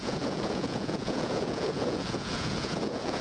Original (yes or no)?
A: no